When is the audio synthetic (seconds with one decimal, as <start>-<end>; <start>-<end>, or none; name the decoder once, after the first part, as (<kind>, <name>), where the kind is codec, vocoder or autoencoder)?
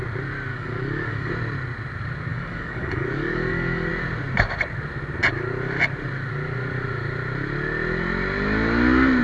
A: 0.5-1.3 (codec, DAC); 2.3-3.9